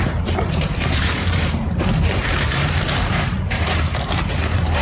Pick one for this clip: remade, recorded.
remade